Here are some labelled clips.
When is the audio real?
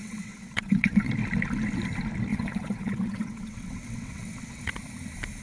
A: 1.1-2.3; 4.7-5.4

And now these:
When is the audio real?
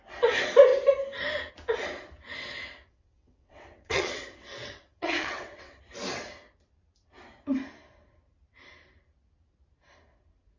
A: 0.0-2.4; 5.8-10.6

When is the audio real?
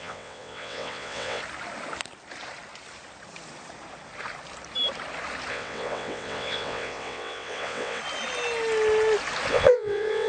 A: 1.4-5.5; 8.0-9.5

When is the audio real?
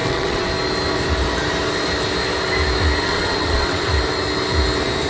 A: 0.5-3.0; 3.9-5.1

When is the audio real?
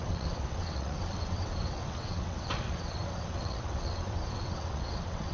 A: none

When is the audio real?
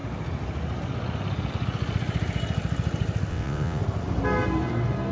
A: 0.0-3.3; 3.8-5.1